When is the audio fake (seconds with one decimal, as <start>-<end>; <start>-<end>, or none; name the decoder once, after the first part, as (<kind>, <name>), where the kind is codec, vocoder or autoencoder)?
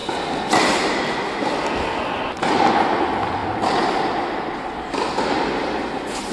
none